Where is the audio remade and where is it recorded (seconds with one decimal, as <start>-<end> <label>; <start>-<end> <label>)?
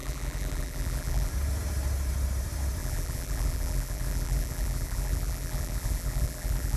0.0-1.3 remade; 1.3-2.8 recorded; 2.8-6.8 remade